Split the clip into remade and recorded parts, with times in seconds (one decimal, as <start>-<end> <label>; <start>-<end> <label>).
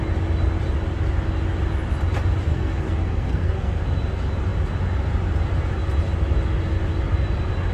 0.0-2.5 recorded; 2.5-3.8 remade; 3.8-7.7 recorded